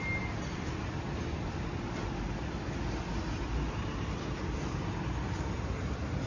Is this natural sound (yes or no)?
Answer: yes